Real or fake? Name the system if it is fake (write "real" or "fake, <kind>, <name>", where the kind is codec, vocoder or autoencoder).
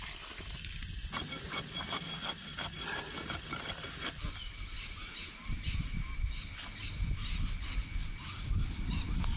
real